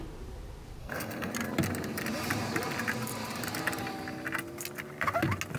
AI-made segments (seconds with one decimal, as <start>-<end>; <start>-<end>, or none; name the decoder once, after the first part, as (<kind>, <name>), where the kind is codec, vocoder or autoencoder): 0.8-1.3 (codec, SNAC)